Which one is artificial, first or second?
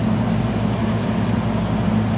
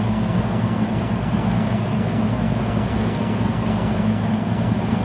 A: second